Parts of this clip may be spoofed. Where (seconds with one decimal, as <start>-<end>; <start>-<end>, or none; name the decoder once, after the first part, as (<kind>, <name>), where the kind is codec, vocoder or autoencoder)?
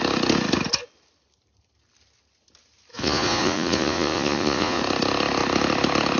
2.9-4.8 (vocoder, Vocos)